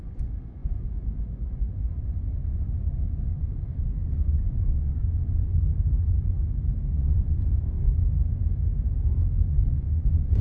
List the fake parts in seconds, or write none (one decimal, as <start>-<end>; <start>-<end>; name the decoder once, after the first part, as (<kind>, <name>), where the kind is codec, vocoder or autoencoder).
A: 0.0-5.5 (vocoder, Vocos); 6.9-8.0; 9.5-10.4